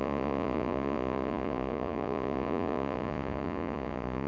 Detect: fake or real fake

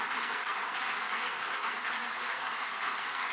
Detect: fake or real fake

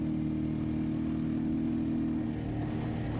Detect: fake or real real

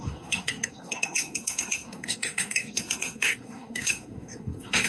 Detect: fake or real fake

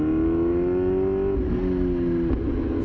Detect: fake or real real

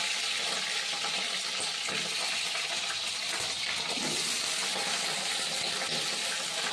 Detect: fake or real real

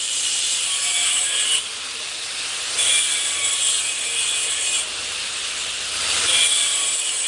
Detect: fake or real fake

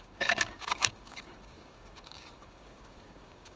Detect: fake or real fake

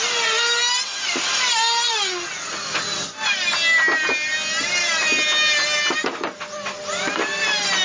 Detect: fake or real real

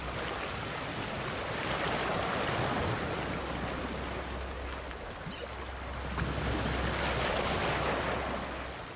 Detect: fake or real real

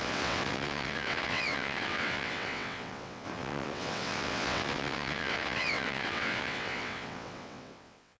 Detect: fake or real fake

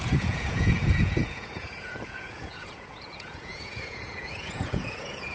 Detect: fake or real fake